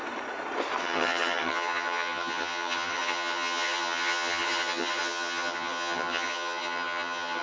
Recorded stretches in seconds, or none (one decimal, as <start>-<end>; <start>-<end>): 0.0-0.8